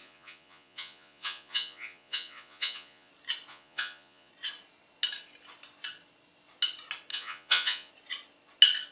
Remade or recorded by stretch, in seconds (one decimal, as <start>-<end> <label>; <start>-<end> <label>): 0.0-3.1 remade; 3.1-3.5 recorded; 3.5-4.3 remade; 4.3-7.1 recorded; 7.1-7.9 remade; 7.9-8.9 recorded